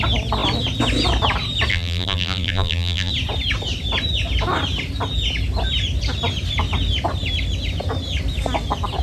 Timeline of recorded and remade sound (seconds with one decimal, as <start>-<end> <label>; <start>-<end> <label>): 0.0-1.7 recorded; 1.7-3.1 remade; 3.1-9.0 recorded